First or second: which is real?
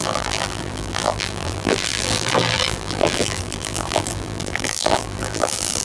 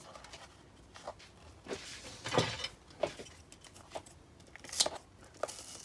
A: second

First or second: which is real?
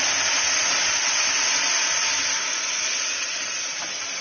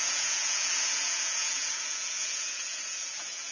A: first